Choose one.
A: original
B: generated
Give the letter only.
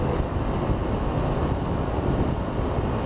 A